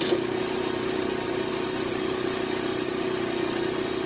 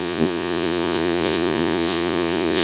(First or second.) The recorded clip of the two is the first